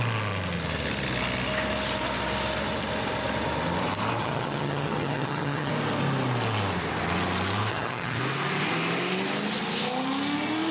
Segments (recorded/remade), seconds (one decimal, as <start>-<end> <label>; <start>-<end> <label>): 0.0-4.2 recorded; 4.2-5.7 remade; 5.7-7.7 recorded; 7.7-8.2 remade; 8.2-10.7 recorded